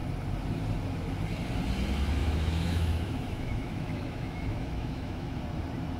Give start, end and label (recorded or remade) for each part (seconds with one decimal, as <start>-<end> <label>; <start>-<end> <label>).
0.0-2.2 recorded; 2.2-5.4 remade; 5.4-6.0 recorded